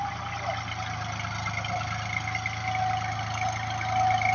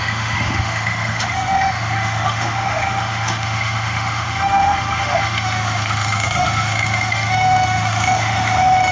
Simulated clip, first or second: second